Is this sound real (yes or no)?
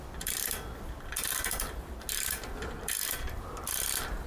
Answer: yes